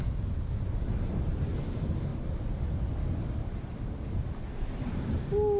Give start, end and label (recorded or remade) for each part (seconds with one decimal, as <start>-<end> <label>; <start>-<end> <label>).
0.0-5.6 recorded